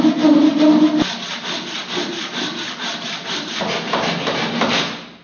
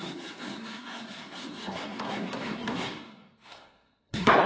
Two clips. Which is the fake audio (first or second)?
second